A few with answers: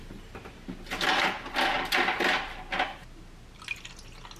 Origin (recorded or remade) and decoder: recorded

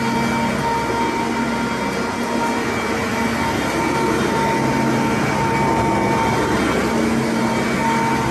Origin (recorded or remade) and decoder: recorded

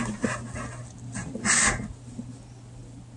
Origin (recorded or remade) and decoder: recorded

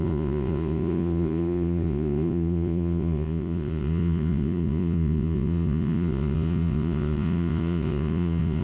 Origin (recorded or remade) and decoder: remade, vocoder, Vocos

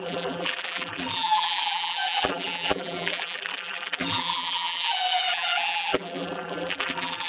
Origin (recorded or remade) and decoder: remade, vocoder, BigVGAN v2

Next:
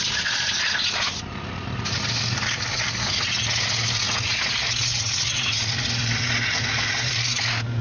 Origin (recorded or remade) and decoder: recorded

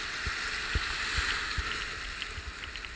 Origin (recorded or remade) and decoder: recorded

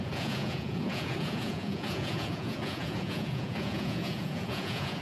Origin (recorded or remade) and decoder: remade, vocoder, Vocos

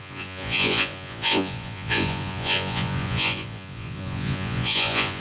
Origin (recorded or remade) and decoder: remade, vocoder, Vocos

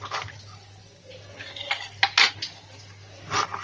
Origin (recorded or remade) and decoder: recorded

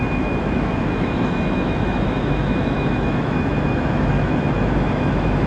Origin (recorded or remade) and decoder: remade, autoencoder, DAC-VAE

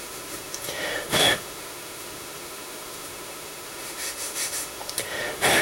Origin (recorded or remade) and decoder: remade, autoencoder, DAC-VAE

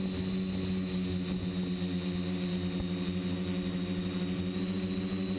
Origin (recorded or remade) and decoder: recorded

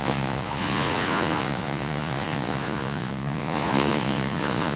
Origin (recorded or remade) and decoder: remade, vocoder, Vocos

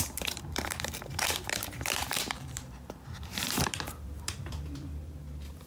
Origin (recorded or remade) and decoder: remade, vocoder, BigVGAN v2